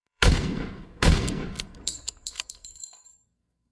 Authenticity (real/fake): fake